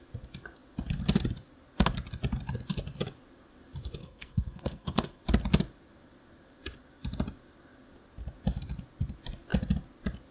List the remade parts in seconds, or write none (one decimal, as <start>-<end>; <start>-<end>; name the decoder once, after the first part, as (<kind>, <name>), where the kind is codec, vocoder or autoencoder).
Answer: 4.0-5.2 (codec, SNAC)